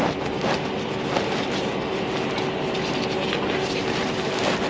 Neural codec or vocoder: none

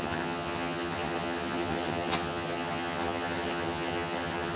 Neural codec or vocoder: vocoder, HiFi-GAN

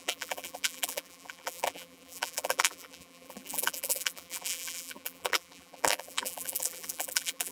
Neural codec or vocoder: vocoder, BigVGAN v2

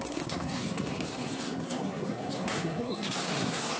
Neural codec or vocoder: codec, SNAC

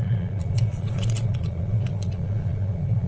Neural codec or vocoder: vocoder, Vocos